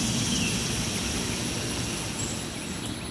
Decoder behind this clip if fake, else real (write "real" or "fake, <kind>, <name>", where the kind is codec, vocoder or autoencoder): real